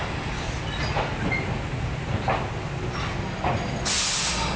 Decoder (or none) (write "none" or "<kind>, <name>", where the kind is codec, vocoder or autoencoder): none